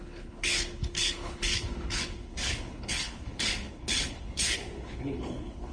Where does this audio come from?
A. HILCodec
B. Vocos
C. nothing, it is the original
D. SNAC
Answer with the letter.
A